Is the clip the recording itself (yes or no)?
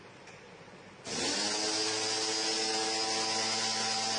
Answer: yes